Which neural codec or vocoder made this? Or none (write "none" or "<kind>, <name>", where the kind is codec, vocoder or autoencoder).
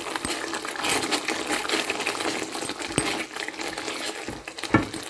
none